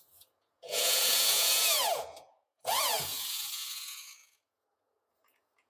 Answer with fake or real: fake